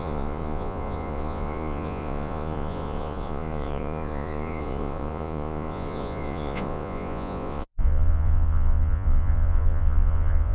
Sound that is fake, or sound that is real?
fake